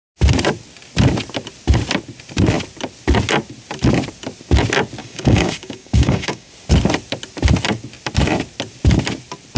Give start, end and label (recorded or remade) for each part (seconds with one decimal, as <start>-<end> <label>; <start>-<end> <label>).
0.0-5.0 recorded; 5.0-6.5 remade; 6.5-9.6 recorded